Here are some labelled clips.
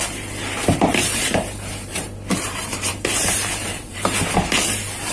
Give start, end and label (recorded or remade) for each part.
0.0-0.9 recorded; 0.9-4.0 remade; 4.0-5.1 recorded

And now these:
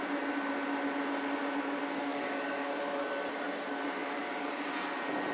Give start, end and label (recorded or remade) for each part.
0.0-2.1 recorded; 2.1-2.7 remade; 2.7-4.0 recorded; 4.0-4.5 remade; 4.5-5.3 recorded